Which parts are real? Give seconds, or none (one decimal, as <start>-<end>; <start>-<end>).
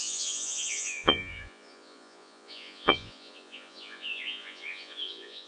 none